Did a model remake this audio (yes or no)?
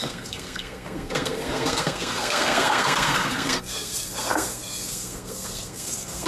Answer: yes